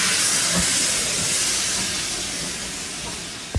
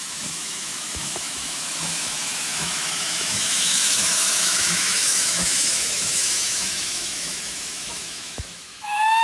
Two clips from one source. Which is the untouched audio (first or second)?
first